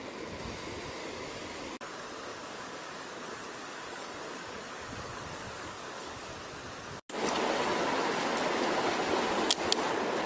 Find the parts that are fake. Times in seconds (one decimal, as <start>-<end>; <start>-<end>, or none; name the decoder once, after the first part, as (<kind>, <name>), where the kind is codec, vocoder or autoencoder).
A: 1.0-1.9 (codec, DAC); 2.3-6.3